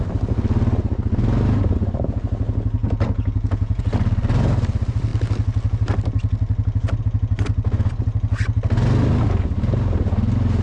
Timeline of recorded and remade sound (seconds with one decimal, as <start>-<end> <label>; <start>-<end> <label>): 0.0-2.8 recorded; 2.8-3.8 remade; 3.8-10.6 recorded